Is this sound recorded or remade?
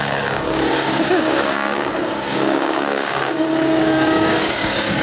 remade